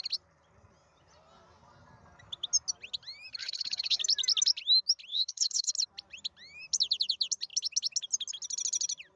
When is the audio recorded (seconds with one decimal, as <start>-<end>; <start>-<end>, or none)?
0.0-3.4; 4.0-5.1; 5.7-9.2